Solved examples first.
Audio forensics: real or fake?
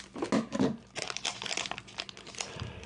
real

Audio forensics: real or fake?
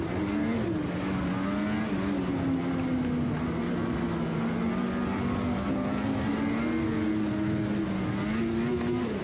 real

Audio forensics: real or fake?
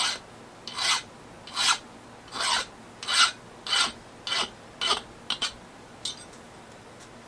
real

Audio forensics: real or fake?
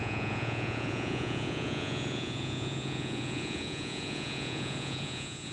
fake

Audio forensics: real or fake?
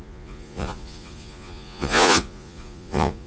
fake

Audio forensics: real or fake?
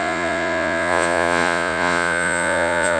fake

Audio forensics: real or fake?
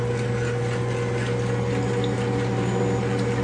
real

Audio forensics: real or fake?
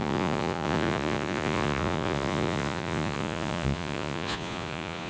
fake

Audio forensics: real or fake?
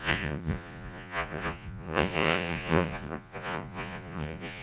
fake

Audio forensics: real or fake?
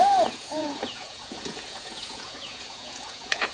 fake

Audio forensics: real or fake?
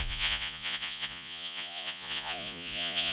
fake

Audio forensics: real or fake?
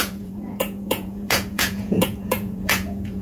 fake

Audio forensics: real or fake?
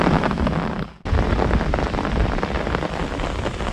real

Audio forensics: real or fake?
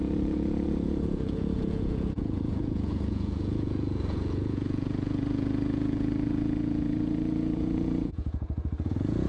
fake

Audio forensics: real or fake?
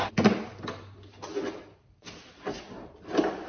real